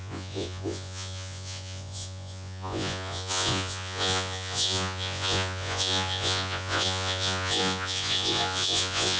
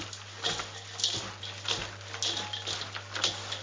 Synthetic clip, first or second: first